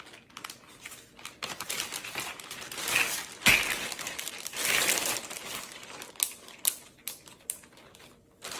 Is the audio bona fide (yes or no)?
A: yes